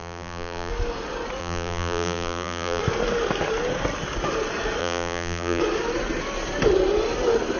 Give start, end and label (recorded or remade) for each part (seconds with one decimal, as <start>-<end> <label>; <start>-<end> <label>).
0.0-0.7 remade; 0.7-1.4 recorded; 1.4-2.8 remade; 2.8-4.8 recorded; 4.8-5.6 remade; 5.6-7.6 recorded